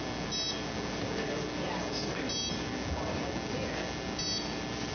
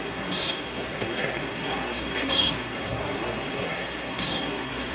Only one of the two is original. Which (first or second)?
first